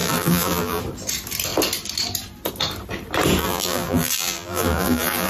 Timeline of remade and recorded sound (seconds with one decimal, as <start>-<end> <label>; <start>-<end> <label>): 0.0-0.8 remade; 0.8-3.4 recorded; 3.4-5.3 remade